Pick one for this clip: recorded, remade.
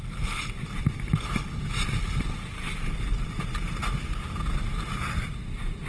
recorded